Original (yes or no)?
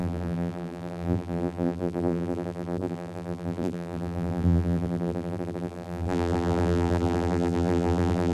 no